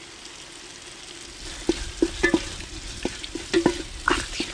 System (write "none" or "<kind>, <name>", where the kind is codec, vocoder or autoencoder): none